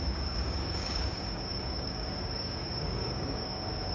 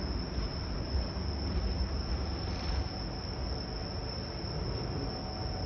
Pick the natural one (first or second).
second